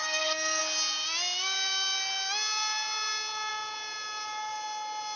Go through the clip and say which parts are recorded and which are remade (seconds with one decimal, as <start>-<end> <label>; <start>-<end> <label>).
0.0-5.2 recorded